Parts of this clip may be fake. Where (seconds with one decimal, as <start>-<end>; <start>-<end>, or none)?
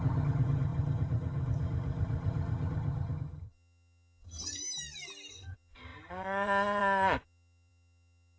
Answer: 0.0-4.6; 5.3-8.4